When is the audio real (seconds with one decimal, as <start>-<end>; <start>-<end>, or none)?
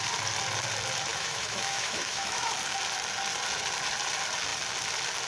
0.0-1.1; 2.5-5.3